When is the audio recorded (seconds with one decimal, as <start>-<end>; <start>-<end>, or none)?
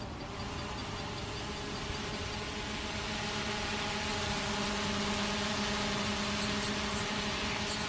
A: 0.0-7.9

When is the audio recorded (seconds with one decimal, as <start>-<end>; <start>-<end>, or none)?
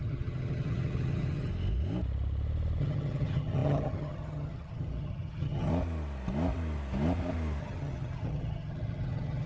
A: 1.5-2.8; 5.7-7.6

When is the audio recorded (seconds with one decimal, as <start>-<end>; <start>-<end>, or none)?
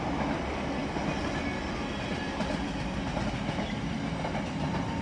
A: 0.0-5.0